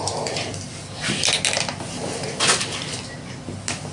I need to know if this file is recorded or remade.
recorded